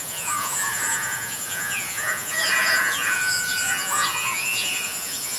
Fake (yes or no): yes